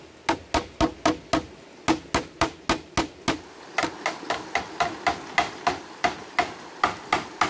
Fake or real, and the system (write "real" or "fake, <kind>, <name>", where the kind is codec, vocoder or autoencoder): real